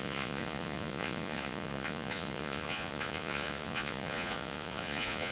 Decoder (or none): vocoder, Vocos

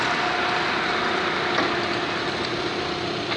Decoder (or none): none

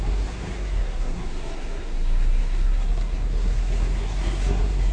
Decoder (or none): codec, SNAC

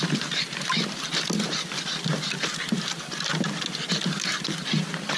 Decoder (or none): none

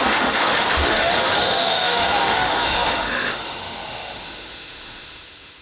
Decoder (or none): autoencoder, DAC-VAE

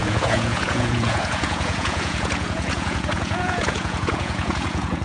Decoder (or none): vocoder, Vocos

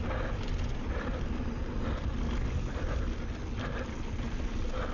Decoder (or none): none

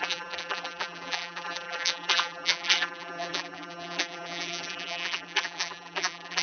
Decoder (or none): vocoder, BigVGAN v2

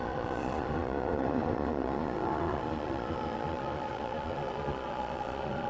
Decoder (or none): vocoder, Vocos